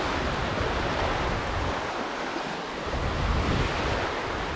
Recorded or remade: recorded